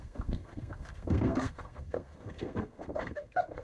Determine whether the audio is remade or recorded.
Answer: remade